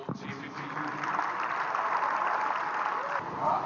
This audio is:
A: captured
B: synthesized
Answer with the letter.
A